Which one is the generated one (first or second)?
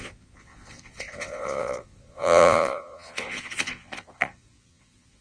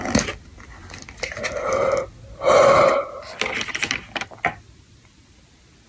first